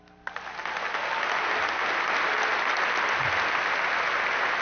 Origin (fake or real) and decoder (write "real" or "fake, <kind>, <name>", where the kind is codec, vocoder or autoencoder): real